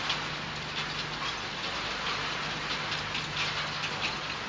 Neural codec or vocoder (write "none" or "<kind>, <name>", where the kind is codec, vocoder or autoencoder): none